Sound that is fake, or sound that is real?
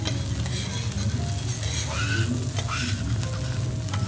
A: real